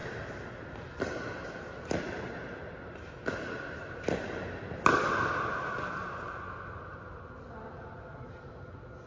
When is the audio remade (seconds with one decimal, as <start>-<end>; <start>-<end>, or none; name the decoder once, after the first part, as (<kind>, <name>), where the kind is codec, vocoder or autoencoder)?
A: none